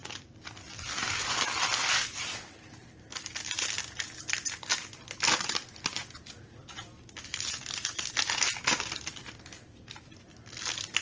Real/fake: real